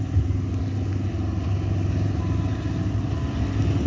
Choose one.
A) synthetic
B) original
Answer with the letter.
B